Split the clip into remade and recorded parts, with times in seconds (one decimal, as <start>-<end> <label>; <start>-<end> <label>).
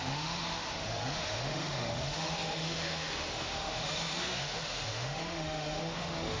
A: 0.0-6.4 remade